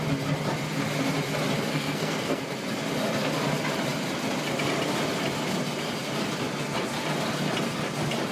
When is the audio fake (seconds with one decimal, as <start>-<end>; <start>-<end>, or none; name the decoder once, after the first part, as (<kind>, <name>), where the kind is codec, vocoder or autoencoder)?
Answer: 1.7-2.4 (codec, SNAC)